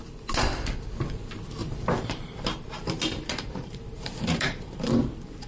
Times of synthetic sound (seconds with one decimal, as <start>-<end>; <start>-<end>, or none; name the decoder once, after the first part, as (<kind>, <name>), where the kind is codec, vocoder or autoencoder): 1.6-4.9 (vocoder, BigVGAN v2)